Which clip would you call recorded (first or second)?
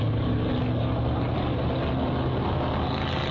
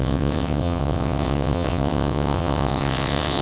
first